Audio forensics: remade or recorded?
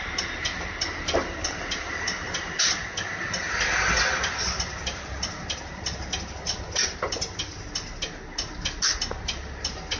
recorded